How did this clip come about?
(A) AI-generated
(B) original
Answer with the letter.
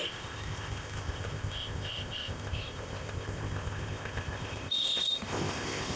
A